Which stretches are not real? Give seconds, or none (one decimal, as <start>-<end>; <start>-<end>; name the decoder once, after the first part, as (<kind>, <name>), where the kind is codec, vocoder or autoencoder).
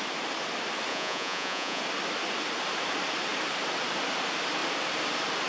0.9-1.8 (vocoder, Vocos)